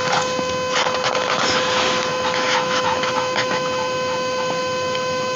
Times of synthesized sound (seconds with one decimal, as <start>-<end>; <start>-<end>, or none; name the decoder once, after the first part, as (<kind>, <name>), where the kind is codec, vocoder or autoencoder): 2.1-5.4 (autoencoder, DAC-VAE)